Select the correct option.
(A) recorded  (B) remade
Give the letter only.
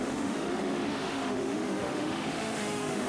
B